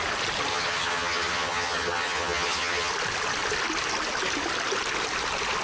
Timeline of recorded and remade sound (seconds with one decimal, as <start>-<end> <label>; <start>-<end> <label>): 0.0-0.5 recorded; 0.5-2.9 remade; 2.9-5.6 recorded